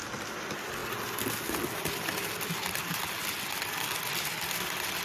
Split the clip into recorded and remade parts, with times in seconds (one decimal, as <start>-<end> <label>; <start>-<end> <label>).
0.0-5.0 recorded